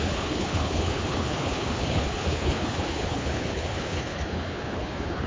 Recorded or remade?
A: remade